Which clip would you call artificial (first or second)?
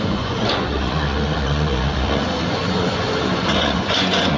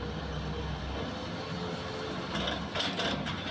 first